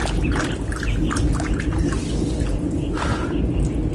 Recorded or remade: recorded